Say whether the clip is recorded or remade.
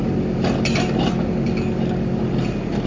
recorded